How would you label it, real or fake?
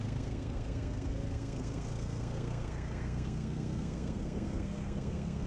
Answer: fake